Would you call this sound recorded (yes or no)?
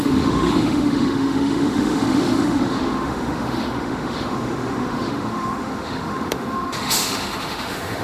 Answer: no